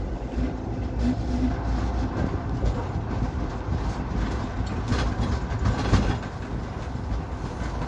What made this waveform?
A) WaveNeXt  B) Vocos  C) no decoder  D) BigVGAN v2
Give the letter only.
C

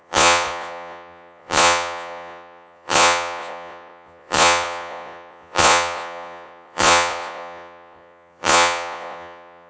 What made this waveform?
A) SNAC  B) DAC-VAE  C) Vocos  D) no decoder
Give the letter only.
C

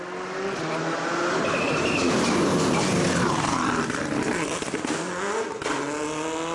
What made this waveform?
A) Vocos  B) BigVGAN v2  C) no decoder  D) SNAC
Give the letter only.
C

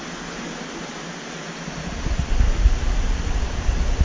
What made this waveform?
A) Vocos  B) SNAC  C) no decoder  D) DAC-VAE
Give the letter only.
C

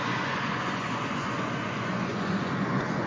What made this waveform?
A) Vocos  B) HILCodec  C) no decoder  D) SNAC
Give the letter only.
A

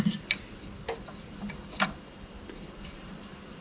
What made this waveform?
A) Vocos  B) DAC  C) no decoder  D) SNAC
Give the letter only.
C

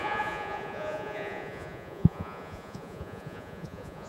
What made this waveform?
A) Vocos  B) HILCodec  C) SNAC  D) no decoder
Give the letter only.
A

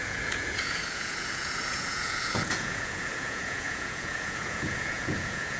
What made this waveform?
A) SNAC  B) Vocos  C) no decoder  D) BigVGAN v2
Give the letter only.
B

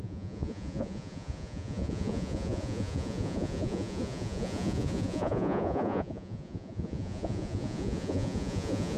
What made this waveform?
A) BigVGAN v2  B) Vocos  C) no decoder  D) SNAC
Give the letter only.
B